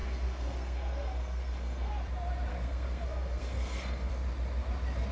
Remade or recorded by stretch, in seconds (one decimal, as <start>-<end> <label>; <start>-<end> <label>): 0.0-1.9 remade; 1.9-2.5 recorded; 2.5-4.1 remade; 4.1-5.1 recorded